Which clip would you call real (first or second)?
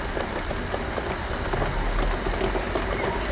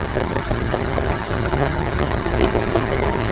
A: first